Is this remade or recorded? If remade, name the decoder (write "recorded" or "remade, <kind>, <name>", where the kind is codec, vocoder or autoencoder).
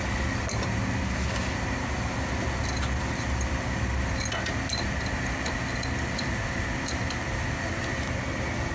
recorded